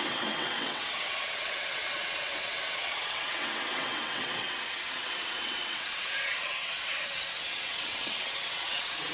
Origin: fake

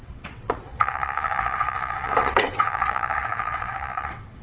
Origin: fake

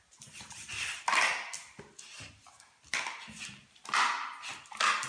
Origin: real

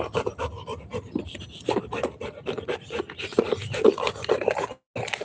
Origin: real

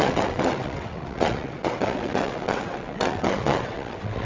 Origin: fake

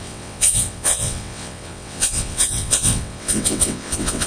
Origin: fake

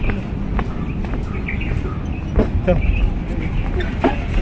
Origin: real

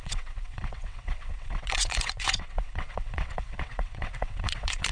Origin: fake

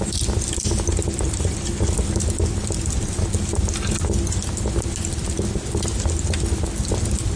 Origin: real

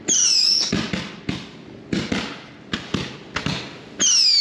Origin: real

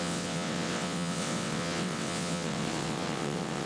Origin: fake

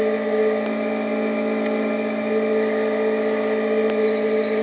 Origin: real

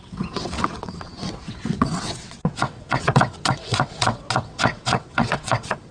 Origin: fake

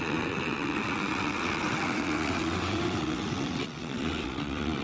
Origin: fake